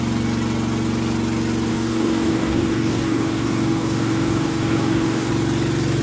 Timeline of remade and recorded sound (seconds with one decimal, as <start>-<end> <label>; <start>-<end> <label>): 0.0-1.7 recorded; 1.7-5.3 remade; 5.3-6.0 recorded